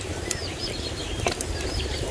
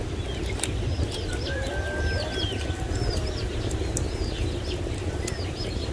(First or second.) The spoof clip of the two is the first